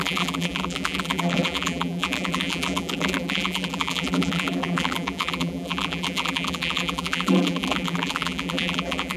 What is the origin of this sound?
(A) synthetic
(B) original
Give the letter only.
A